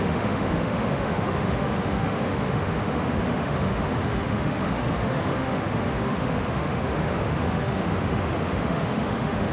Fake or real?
fake